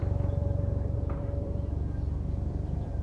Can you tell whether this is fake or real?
fake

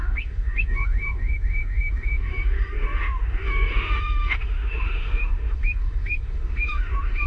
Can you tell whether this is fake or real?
fake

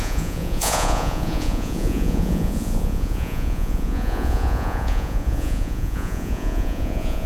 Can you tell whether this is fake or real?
fake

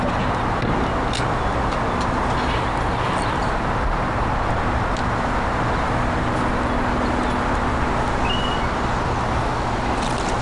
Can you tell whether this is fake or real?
real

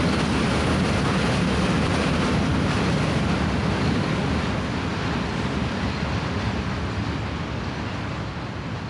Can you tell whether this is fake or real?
real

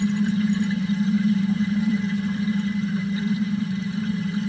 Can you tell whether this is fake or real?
fake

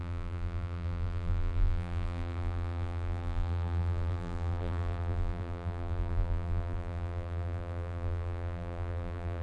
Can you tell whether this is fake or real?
fake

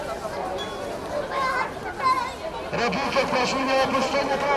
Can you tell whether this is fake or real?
real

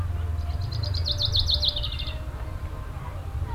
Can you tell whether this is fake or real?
real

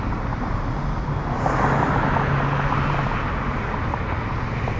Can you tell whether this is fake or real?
real